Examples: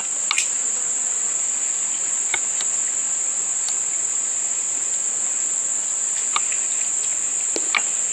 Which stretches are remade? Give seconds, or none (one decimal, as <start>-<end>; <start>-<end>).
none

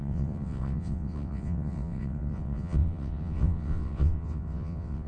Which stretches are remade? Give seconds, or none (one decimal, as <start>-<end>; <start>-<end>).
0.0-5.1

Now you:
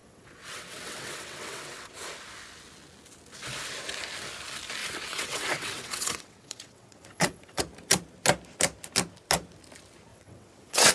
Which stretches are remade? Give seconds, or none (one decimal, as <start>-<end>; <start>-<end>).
0.0-1.9; 4.8-7.6; 10.1-10.9